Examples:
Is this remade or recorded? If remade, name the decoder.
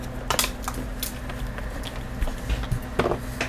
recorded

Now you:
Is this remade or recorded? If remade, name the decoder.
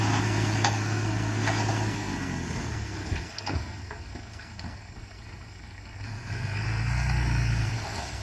remade, codec, SNAC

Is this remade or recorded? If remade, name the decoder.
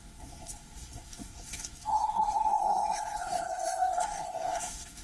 remade, codec, SNAC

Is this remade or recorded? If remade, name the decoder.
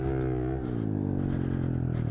recorded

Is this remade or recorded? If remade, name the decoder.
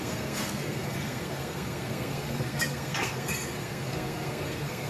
remade, codec, SNAC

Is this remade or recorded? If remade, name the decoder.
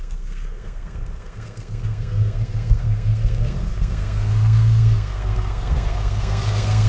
remade, codec, SNAC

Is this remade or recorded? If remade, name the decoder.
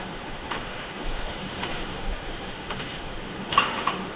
remade, autoencoder, DAC-VAE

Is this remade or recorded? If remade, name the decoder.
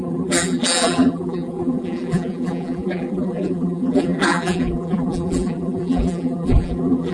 remade, vocoder, BigVGAN v2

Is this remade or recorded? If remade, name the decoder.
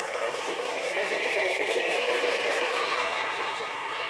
remade, codec, SNAC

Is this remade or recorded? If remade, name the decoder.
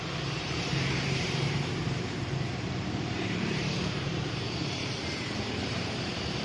remade, vocoder, BigVGAN v2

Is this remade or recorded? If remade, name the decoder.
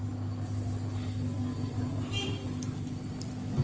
recorded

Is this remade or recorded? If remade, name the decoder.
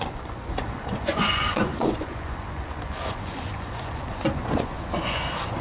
remade, vocoder, Vocos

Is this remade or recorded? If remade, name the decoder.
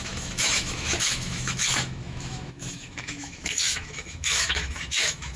remade, autoencoder, DAC-VAE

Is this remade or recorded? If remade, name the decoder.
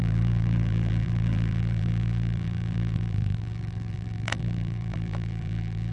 remade, vocoder, BigVGAN v2